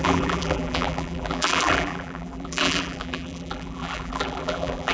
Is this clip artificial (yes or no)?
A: yes